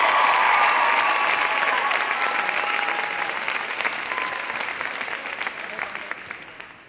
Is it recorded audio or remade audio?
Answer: recorded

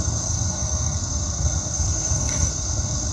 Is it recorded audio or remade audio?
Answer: remade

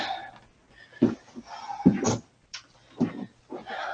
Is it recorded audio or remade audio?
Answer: recorded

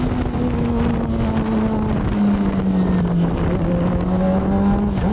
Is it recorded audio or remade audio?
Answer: recorded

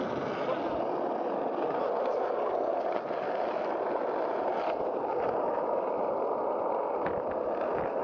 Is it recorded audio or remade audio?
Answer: recorded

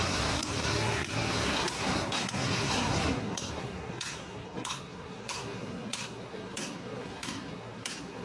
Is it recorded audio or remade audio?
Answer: remade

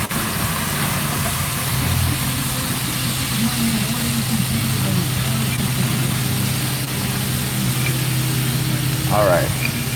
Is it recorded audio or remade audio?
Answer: recorded